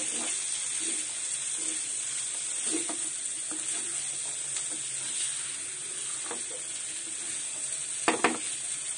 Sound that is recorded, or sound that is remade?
recorded